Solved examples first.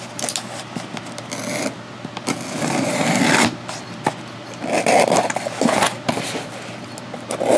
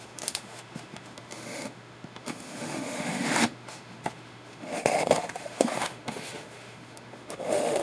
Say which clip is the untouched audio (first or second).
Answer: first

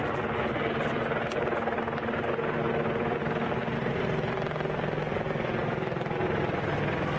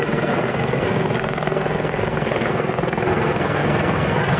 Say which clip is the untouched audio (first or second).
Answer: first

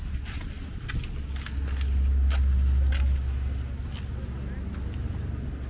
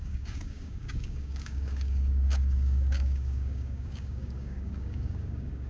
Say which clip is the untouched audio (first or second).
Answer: first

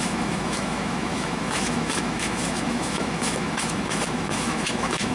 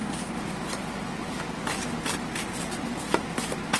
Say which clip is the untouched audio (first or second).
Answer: second